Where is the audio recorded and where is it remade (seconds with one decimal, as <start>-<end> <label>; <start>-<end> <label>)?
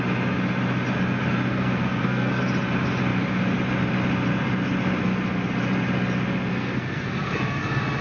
0.0-1.5 recorded; 1.5-2.4 remade; 2.4-6.5 recorded; 6.5-7.6 remade; 7.6-8.0 recorded